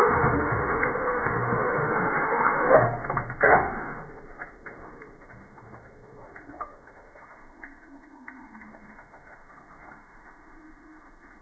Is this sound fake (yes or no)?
yes